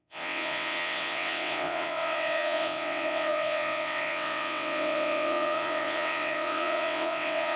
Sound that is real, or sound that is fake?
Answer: fake